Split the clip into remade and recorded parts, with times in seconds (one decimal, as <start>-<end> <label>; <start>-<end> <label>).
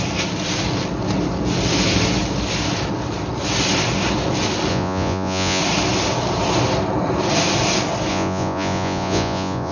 0.0-4.7 recorded; 4.7-5.6 remade; 5.6-8.1 recorded; 8.1-9.7 remade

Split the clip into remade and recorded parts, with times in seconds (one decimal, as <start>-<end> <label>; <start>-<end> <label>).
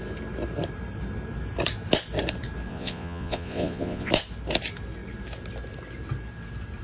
0.0-2.7 recorded; 2.7-4.1 remade; 4.1-6.8 recorded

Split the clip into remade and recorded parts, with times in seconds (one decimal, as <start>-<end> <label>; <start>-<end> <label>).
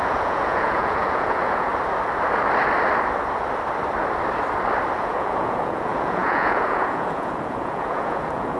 0.0-1.7 remade; 1.7-5.0 recorded; 5.0-8.6 remade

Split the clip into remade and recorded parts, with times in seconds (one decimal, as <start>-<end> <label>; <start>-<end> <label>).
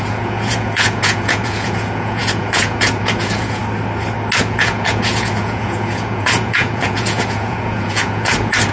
0.0-3.6 remade; 3.6-4.4 recorded; 4.4-8.7 remade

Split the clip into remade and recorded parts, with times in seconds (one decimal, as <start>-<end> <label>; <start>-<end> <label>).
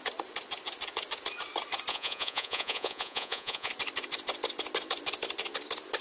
0.0-1.9 recorded; 1.9-3.7 remade; 3.7-6.0 recorded